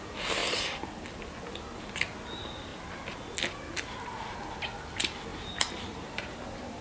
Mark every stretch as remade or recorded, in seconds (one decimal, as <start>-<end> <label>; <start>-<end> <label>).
0.0-5.3 recorded; 5.3-6.8 remade